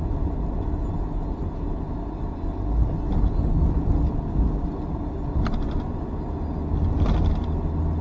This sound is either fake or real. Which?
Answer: real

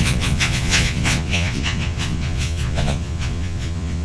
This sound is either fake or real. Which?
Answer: fake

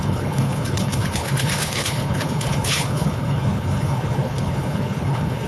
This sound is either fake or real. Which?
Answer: fake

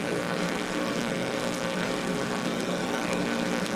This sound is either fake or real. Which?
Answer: fake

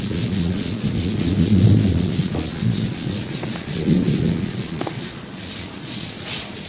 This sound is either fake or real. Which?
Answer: fake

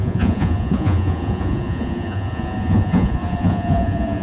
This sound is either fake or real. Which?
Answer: fake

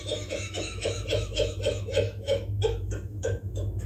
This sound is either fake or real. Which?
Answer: fake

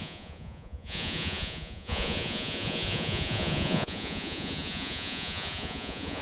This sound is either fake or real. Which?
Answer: fake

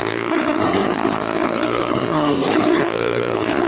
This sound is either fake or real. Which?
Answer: fake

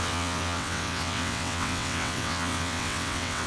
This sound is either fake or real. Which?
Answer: fake